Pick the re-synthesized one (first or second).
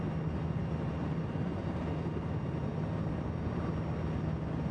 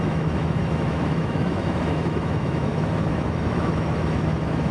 second